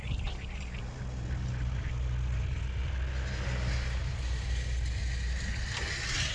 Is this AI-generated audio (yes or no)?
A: no